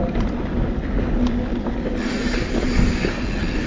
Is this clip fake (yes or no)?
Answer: no